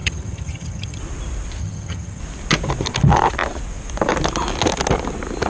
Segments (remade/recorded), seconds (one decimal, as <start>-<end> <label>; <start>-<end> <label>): 0.0-1.0 remade; 1.0-1.6 recorded; 1.6-2.2 remade; 2.2-5.5 recorded

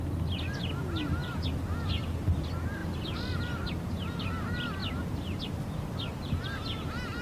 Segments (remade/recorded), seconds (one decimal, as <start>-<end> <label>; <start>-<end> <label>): 0.0-2.8 recorded; 2.8-3.4 remade; 3.4-4.8 recorded; 4.8-7.2 remade

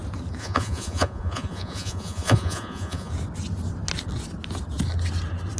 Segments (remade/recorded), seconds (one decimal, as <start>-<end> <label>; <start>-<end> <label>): 0.0-0.4 recorded; 0.4-3.1 remade; 3.1-5.6 recorded

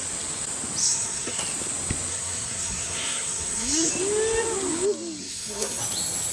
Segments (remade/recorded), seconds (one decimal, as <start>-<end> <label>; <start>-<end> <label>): 0.0-0.8 recorded; 0.8-1.4 remade; 1.4-2.1 recorded; 2.1-3.9 remade; 3.9-5.2 recorded; 5.2-5.8 remade; 5.8-6.3 recorded

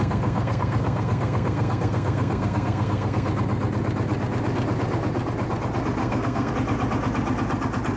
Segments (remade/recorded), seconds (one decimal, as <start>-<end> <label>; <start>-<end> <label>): 0.0-3.3 remade; 3.3-6.0 recorded; 6.0-6.5 remade; 6.5-8.0 recorded